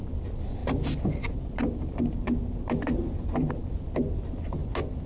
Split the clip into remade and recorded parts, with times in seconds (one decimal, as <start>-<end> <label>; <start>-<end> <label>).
0.0-5.1 recorded